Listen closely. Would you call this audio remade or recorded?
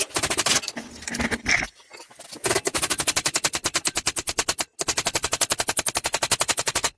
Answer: recorded